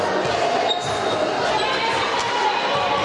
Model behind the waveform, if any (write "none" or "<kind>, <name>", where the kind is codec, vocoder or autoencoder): none